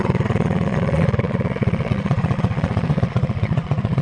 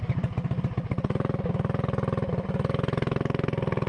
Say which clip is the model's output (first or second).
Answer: first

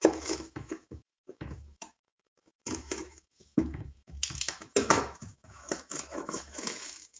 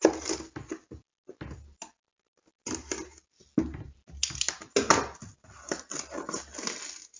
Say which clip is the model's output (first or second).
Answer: first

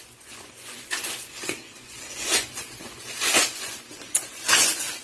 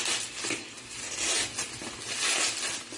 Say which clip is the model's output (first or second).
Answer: first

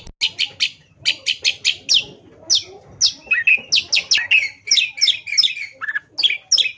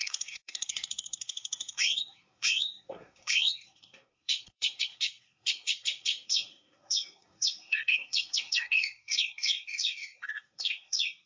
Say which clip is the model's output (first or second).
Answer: second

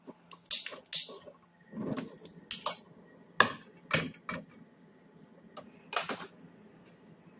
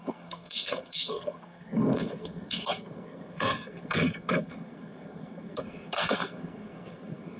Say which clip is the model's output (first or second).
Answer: second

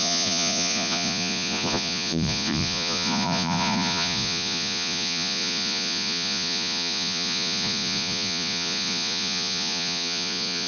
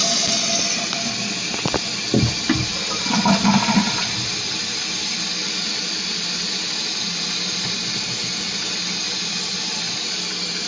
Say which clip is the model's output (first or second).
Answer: first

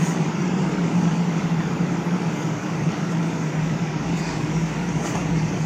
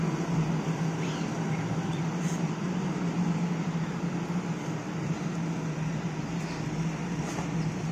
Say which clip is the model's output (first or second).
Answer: first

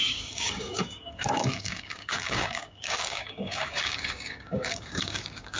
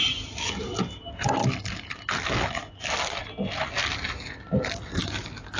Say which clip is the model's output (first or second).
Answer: first